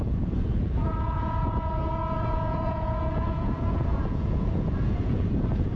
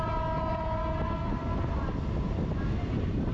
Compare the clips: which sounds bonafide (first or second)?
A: second